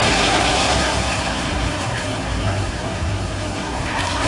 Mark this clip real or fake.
fake